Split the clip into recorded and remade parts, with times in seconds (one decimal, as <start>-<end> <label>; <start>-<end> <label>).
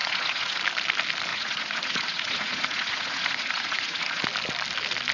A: 0.0-0.6 remade; 0.6-1.3 recorded; 1.3-4.2 remade; 4.2-5.1 recorded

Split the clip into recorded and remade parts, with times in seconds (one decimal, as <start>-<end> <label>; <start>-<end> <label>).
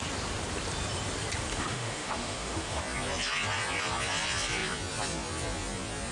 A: 0.0-1.5 recorded; 1.5-2.8 remade; 2.8-6.1 recorded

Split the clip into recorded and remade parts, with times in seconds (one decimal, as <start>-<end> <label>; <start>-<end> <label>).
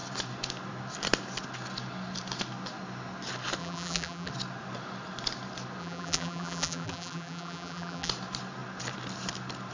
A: 0.0-3.6 recorded; 3.6-4.3 remade; 4.3-5.8 recorded; 5.8-8.1 remade; 8.1-9.7 recorded